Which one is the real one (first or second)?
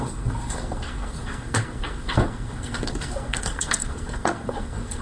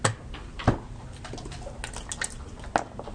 second